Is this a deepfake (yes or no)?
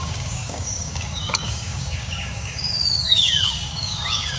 yes